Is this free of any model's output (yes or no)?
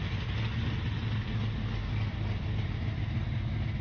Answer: yes